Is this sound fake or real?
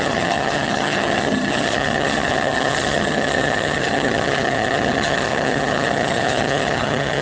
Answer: fake